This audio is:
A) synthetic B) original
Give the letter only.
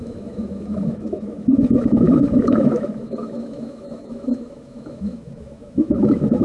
A